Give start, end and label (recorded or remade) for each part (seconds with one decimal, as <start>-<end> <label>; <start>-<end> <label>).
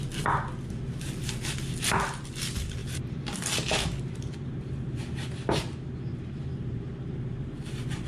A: 0.0-8.1 recorded